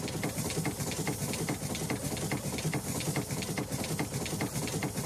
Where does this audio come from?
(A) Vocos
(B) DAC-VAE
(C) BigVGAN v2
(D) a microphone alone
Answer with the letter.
D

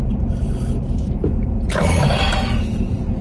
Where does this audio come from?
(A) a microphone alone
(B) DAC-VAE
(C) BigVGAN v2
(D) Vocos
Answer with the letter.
A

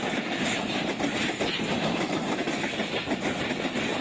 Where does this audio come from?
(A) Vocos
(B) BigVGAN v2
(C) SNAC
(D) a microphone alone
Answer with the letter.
D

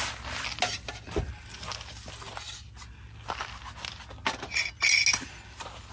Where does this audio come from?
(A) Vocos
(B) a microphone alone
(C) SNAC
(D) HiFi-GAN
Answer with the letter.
B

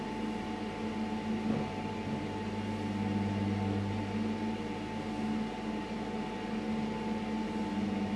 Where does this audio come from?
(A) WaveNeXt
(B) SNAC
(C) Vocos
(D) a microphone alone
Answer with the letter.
D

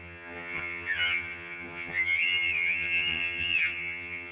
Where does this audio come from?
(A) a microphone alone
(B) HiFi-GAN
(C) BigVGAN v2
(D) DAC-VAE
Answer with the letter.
B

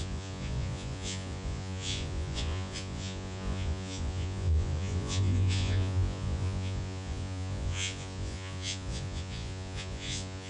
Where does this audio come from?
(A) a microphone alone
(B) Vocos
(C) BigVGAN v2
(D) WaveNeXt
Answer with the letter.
B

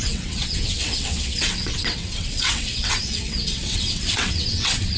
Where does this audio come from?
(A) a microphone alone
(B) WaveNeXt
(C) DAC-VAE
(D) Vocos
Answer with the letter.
B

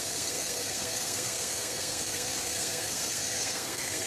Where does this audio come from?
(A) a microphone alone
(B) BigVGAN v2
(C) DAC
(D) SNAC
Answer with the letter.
D